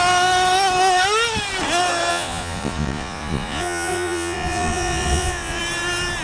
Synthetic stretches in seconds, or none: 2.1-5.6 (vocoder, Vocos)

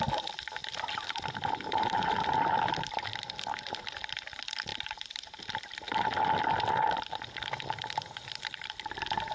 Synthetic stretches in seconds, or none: 0.0-9.3 (vocoder, BigVGAN v2)

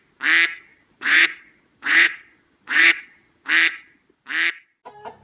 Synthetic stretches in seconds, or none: 0.7-3.5 (vocoder, Vocos)

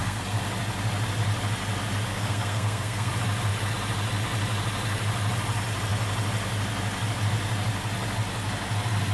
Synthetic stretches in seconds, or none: 0.0-0.5 (codec, SNAC); 2.1-3.1